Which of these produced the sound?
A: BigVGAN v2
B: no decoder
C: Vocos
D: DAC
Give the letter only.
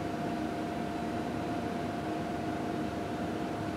A